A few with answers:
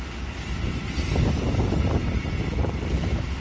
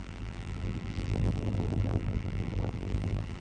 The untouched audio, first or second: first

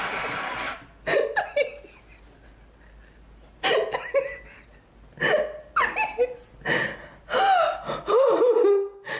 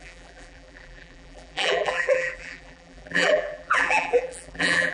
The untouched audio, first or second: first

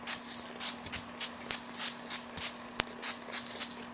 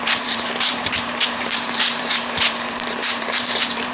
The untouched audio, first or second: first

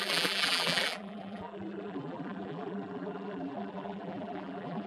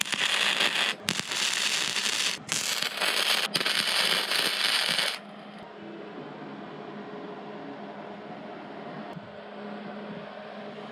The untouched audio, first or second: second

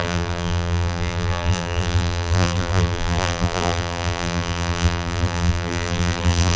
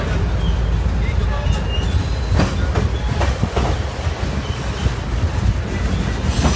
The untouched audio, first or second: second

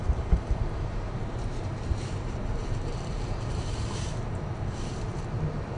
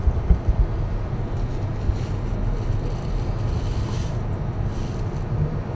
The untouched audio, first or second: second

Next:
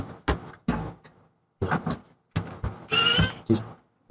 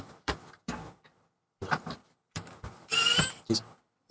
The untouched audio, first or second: first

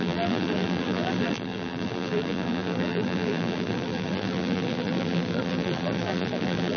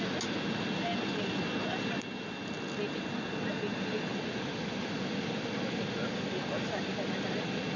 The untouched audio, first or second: second